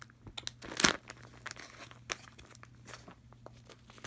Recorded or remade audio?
recorded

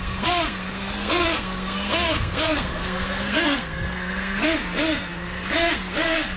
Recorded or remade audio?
remade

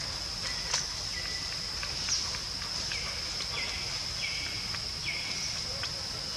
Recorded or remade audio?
recorded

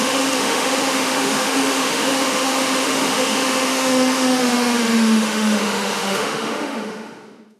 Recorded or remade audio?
remade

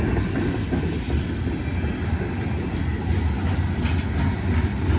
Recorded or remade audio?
recorded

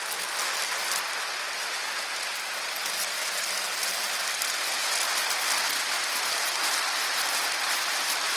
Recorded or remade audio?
recorded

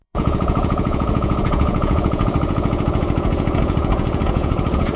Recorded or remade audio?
remade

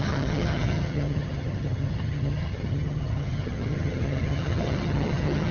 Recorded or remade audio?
remade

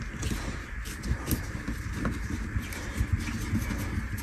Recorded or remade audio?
recorded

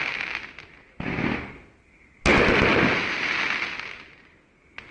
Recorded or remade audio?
recorded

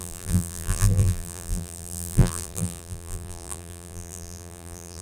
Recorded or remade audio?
remade